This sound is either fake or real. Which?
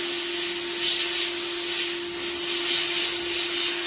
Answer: real